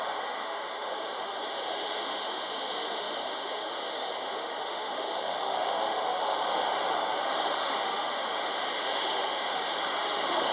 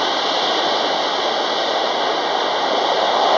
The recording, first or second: second